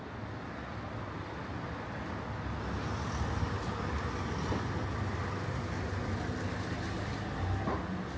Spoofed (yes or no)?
no